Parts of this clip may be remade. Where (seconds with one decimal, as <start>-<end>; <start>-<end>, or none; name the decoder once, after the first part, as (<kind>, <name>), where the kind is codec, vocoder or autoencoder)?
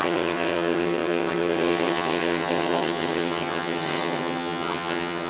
0.0-5.3 (vocoder, HiFi-GAN)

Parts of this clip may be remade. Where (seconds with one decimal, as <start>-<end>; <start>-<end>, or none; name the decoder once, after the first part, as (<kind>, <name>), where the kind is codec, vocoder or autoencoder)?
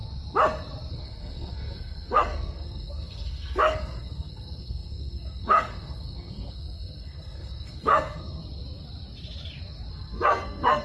0.9-8.4 (codec, SNAC); 9.9-10.8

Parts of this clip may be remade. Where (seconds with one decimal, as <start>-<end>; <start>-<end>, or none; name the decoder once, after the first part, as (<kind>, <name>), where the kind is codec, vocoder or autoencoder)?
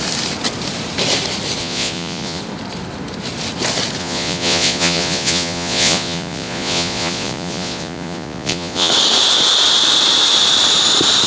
1.6-2.4 (vocoder, Vocos); 4.0-8.9